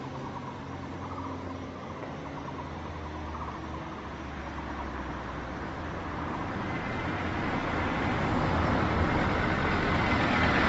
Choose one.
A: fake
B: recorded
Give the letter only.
B